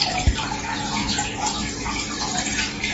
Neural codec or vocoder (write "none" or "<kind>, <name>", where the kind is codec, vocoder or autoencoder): none